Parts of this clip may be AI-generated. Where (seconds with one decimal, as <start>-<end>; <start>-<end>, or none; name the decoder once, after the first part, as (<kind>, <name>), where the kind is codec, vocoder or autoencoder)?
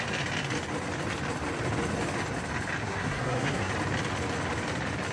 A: 2.8-3.7 (codec, SNAC)